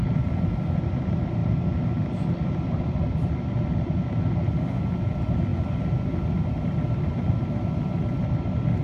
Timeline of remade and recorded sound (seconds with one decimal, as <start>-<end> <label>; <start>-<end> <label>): 0.0-8.8 recorded